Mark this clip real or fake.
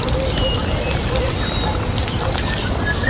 real